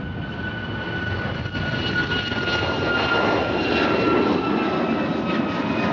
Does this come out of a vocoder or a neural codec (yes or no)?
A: no